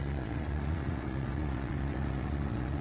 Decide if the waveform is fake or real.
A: fake